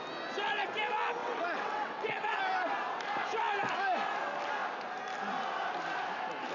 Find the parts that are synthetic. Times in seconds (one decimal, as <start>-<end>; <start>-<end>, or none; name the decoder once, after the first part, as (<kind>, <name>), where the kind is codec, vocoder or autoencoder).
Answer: 1.2-2.4 (vocoder, WaveNeXt)